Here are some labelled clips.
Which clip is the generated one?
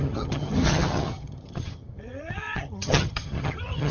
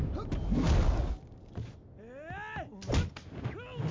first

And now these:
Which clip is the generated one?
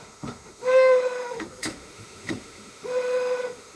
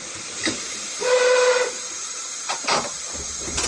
first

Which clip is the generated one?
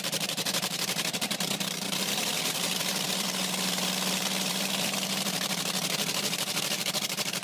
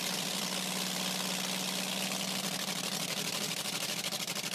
first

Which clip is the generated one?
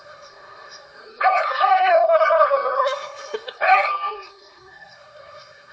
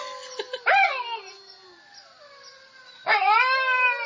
first